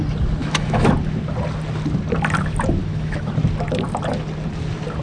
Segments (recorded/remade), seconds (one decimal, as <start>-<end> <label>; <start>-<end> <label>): 0.0-0.4 recorded; 0.4-0.9 remade; 0.9-2.8 recorded; 2.8-3.3 remade; 3.3-5.0 recorded